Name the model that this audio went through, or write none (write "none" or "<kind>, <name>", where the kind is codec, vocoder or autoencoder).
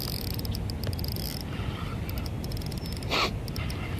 none